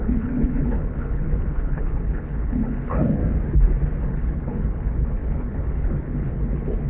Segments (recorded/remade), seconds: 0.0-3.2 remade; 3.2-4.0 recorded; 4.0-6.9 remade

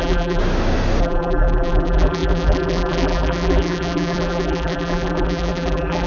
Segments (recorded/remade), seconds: 0.0-0.4 remade; 0.4-1.0 recorded; 1.0-6.1 remade

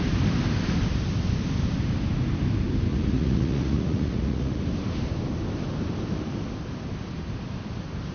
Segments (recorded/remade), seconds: 0.0-2.9 recorded; 2.9-4.6 remade; 4.6-8.1 recorded

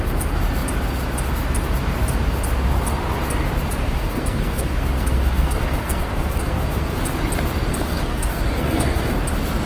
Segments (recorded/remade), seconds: 0.0-3.8 recorded; 3.8-7.0 remade; 7.0-7.7 recorded; 7.7-9.2 remade; 9.2-9.7 recorded